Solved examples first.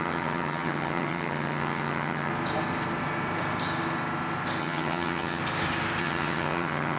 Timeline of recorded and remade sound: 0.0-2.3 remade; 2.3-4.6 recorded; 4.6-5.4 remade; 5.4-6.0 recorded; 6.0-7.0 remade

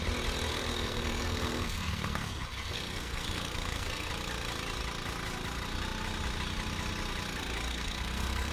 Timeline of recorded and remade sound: 0.0-0.5 recorded; 0.5-4.1 remade; 4.1-7.7 recorded; 7.7-8.5 remade

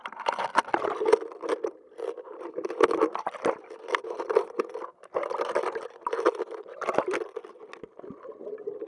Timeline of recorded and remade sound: 0.0-8.9 recorded

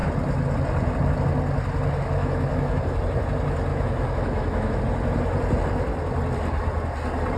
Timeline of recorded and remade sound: 0.0-2.2 recorded; 2.2-3.0 remade; 3.0-3.7 recorded; 3.7-4.8 remade; 4.8-7.4 recorded

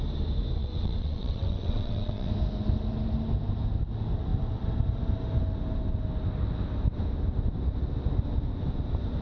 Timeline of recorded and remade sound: 0.0-0.6 recorded; 0.6-2.3 remade; 2.3-9.2 recorded

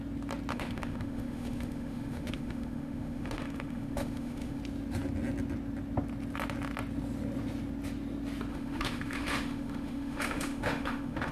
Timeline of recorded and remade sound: 0.0-0.5 recorded; 0.5-4.6 remade; 4.6-8.5 recorded; 8.5-11.3 remade